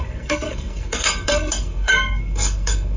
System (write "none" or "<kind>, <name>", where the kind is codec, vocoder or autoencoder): codec, SNAC